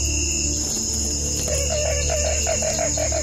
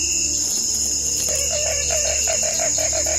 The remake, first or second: second